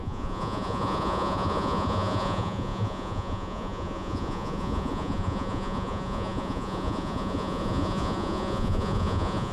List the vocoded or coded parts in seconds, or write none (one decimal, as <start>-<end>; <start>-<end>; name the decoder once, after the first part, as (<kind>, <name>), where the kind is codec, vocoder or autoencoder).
0.0-9.5 (vocoder, Vocos)

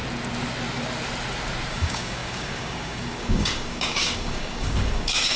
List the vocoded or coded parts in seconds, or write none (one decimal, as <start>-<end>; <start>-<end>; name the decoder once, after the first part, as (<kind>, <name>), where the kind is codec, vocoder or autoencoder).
1.7-5.4 (codec, DAC)